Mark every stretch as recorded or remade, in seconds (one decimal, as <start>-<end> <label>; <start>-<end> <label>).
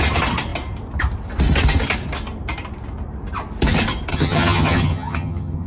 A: 0.0-4.1 recorded; 4.1-5.7 remade